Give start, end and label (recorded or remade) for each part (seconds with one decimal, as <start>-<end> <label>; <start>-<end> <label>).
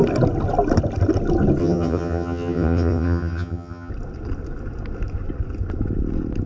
0.0-1.6 recorded; 1.6-3.9 remade; 3.9-6.5 recorded